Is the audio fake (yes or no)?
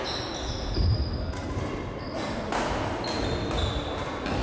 no